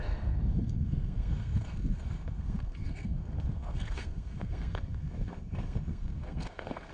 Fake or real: fake